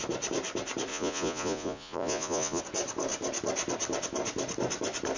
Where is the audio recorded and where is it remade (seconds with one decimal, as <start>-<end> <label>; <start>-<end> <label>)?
0.0-0.9 recorded; 0.9-2.6 remade; 2.6-5.2 recorded